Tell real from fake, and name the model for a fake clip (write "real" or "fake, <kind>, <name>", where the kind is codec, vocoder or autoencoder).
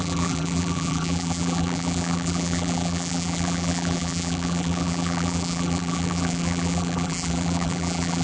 fake, vocoder, BigVGAN v2